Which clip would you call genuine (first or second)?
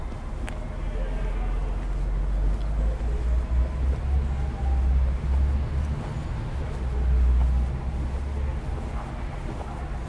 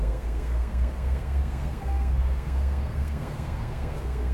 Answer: first